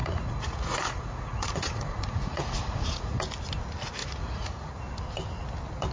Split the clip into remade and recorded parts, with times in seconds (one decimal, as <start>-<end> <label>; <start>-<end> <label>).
0.0-3.2 remade; 3.2-4.0 recorded; 4.0-4.7 remade; 4.7-5.9 recorded